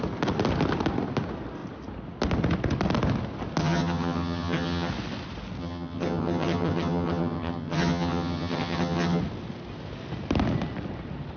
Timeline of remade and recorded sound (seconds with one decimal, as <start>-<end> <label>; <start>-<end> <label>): 0.0-3.6 recorded; 3.6-4.9 remade; 4.9-5.6 recorded; 5.6-9.2 remade; 9.2-11.4 recorded